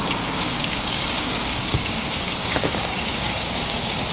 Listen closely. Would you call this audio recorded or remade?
remade